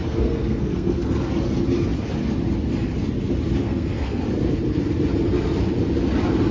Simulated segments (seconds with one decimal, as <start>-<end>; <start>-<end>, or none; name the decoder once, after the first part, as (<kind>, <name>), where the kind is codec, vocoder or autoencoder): 0.0-1.3 (codec, SNAC); 3.6-4.2